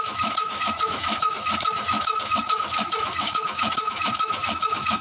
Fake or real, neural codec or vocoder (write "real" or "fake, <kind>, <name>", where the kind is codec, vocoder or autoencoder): fake, autoencoder, DAC-VAE